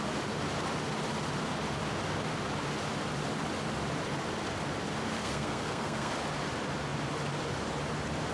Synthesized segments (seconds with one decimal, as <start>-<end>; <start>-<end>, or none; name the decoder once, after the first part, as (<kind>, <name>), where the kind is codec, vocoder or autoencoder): 5.2-6.1 (codec, SNAC)